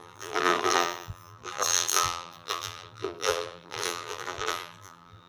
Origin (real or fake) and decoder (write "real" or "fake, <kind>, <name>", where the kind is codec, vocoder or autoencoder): fake, vocoder, BigVGAN v2